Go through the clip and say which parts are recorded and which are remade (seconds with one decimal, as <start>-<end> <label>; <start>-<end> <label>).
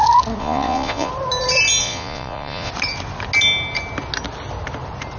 0.0-0.4 recorded; 0.4-1.1 remade; 1.1-1.8 recorded; 1.8-2.7 remade; 2.7-5.2 recorded